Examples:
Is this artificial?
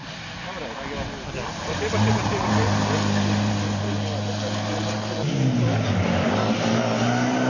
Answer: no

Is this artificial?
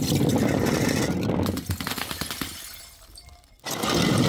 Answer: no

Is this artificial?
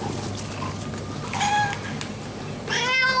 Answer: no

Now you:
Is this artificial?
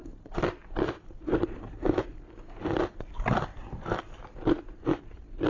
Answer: no